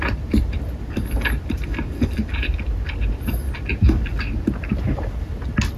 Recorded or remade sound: recorded